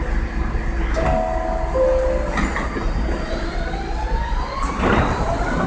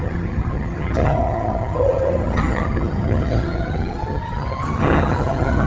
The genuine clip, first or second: first